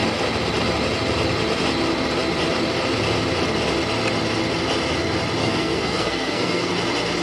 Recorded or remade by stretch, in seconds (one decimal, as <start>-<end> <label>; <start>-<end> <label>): 0.0-5.4 recorded; 5.4-6.7 remade; 6.7-7.2 recorded